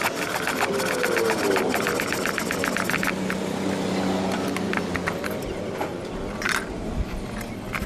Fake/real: real